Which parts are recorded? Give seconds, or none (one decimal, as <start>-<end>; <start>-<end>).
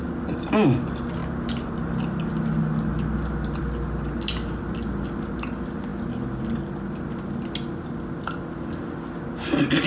0.0-9.9